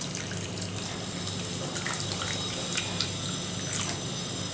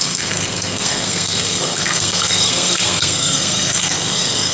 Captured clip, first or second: first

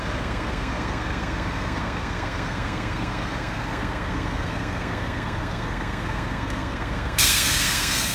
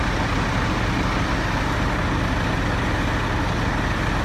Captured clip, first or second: second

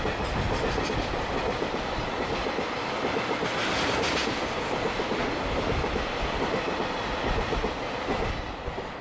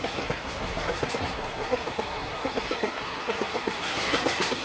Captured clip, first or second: first